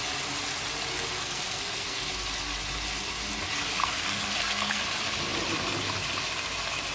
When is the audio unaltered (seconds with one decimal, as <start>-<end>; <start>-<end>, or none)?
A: 0.0-0.9; 2.0-3.8; 4.8-6.9